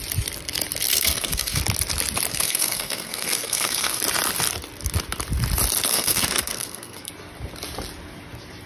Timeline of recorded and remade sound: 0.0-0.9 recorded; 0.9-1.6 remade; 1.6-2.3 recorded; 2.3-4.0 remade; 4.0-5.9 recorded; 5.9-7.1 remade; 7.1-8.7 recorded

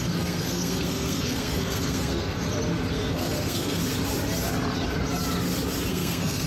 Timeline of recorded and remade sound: 0.0-2.4 remade; 2.4-2.9 recorded; 2.9-3.8 remade; 3.8-5.9 recorded; 5.9-6.5 remade

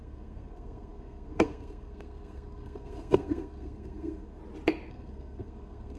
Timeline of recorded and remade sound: 0.0-4.4 remade; 4.4-4.9 recorded; 4.9-6.0 remade